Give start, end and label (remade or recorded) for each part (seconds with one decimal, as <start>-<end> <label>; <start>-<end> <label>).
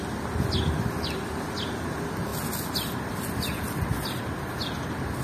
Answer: 0.0-5.2 recorded